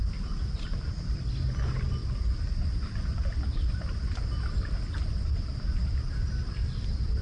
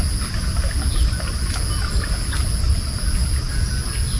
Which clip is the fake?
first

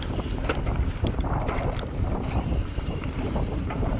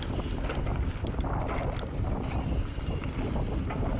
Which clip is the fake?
first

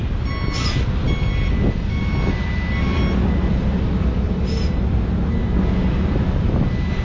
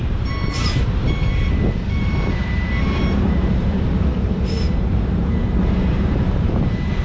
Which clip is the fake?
second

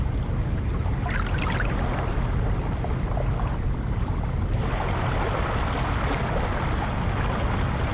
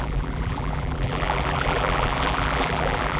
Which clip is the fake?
second